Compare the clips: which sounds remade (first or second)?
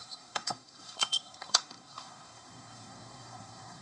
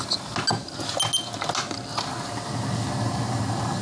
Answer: first